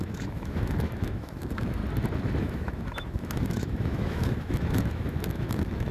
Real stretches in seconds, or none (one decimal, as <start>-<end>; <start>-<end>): 1.8-2.4